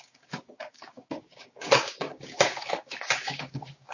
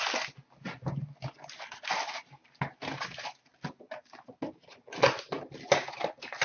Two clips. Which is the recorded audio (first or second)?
second